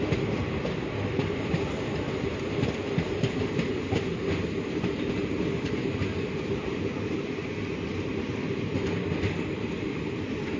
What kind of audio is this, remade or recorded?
remade